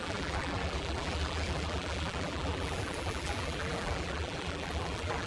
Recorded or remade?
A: remade